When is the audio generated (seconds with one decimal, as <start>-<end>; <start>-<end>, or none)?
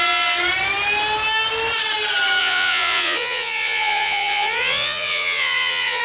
2.4-6.0